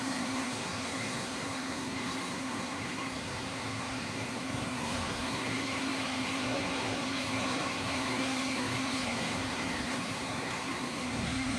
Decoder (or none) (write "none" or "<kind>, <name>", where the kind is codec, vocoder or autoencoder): codec, SNAC